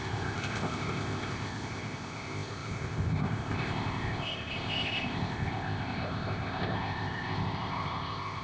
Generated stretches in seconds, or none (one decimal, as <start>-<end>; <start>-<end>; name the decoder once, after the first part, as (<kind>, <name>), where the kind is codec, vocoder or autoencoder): 0.0-8.4 (codec, ZipCodec)